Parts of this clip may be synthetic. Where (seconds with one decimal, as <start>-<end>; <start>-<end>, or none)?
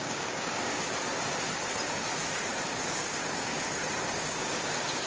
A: 0.0-0.7; 2.7-3.5; 4.2-5.1